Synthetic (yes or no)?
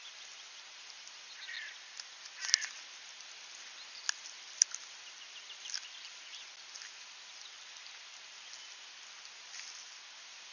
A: no